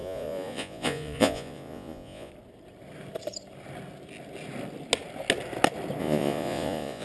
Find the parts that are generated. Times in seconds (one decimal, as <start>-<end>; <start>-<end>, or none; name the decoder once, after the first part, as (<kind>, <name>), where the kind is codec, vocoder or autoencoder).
0.0-2.3 (vocoder, Vocos); 6.0-7.0